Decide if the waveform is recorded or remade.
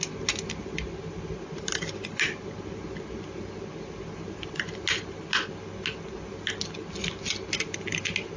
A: recorded